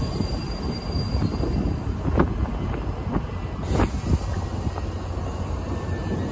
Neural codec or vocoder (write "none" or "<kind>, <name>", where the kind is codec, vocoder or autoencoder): none